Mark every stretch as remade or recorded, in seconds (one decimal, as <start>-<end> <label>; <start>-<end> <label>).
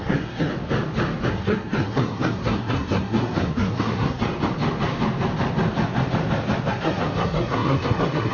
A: 0.0-0.5 remade; 0.5-1.3 recorded; 1.3-4.2 remade; 4.2-6.7 recorded; 6.7-8.3 remade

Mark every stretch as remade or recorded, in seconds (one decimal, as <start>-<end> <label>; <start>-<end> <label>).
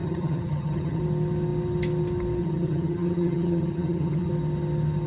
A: 0.0-1.0 remade; 1.0-2.4 recorded; 2.4-4.3 remade; 4.3-5.1 recorded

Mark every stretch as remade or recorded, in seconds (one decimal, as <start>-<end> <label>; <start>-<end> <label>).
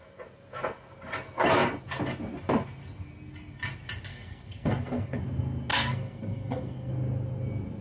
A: 0.0-4.1 recorded; 4.1-5.2 remade; 5.2-5.7 recorded; 5.7-6.9 remade; 6.9-7.8 recorded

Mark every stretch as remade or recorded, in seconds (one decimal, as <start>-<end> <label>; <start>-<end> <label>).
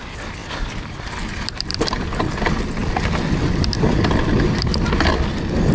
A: 0.0-5.7 recorded